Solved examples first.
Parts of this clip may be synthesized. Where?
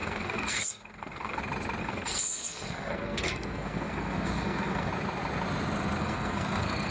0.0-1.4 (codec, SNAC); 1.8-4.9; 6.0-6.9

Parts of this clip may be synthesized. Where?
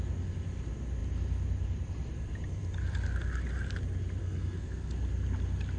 4.2-4.9 (codec, SNAC)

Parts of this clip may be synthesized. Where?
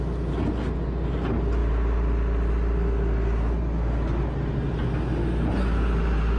none